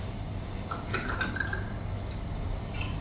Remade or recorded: recorded